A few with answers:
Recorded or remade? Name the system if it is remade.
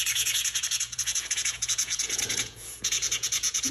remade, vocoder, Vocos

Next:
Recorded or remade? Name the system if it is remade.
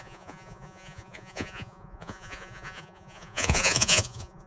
remade, vocoder, Vocos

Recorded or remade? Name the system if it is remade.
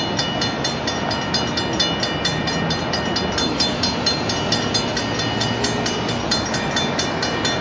recorded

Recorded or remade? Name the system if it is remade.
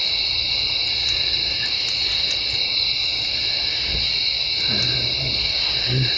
recorded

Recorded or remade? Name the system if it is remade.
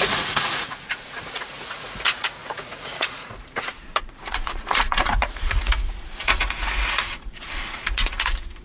remade, vocoder, Vocos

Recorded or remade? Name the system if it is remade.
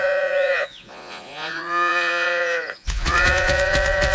remade, vocoder, Vocos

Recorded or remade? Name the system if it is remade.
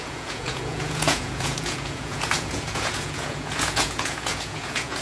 remade, vocoder, Vocos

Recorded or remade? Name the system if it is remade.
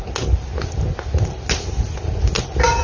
recorded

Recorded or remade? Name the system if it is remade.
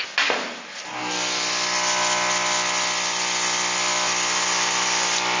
recorded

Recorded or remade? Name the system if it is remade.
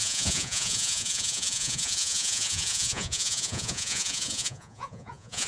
remade, vocoder, Vocos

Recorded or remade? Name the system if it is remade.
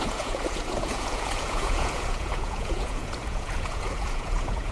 remade, vocoder, Vocos